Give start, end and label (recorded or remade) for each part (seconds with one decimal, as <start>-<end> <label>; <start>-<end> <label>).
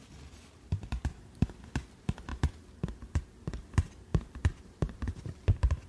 0.0-4.1 recorded; 4.1-5.4 remade; 5.4-5.9 recorded